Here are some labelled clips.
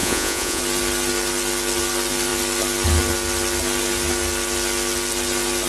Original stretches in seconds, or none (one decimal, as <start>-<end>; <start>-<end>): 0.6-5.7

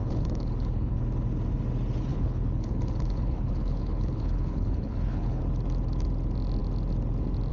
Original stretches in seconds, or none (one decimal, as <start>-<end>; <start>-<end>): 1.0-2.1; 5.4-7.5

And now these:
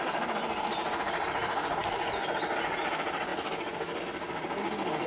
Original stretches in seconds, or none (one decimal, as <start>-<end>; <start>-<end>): 0.0-5.1

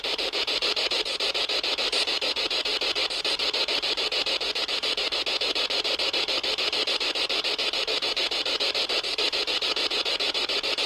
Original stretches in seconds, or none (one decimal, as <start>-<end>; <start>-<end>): 2.7-4.6; 6.4-6.9

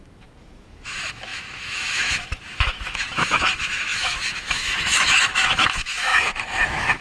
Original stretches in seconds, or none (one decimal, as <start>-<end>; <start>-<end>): none